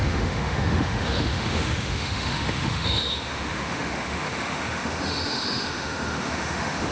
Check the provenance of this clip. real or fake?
fake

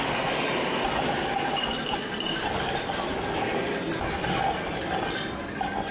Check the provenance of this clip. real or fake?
real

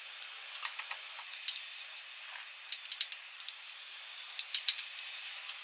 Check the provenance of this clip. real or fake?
real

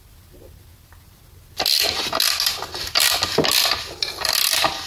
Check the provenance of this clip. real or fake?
real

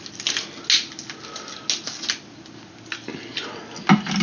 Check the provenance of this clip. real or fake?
real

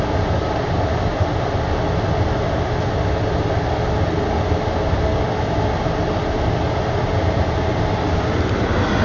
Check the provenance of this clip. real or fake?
real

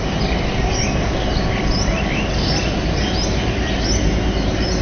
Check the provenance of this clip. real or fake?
real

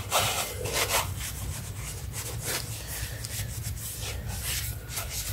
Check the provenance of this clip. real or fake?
real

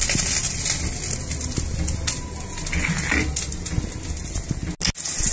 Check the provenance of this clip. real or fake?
real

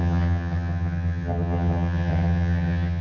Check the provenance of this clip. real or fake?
fake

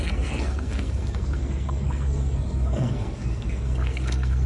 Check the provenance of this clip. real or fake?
fake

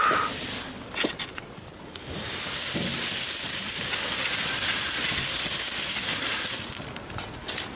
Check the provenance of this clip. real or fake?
real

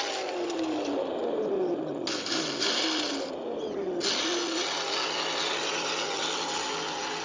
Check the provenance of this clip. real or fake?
real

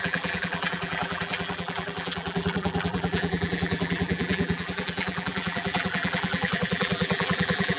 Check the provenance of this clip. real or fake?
fake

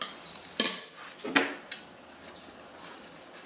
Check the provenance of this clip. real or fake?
real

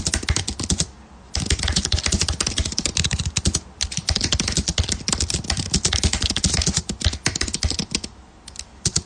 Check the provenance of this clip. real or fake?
real